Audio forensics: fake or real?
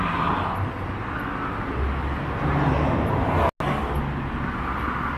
real